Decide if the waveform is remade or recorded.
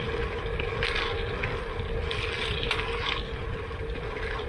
recorded